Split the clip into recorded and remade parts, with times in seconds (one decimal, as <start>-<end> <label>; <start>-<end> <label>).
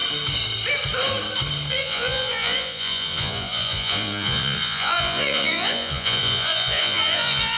0.0-1.7 recorded; 1.7-7.6 remade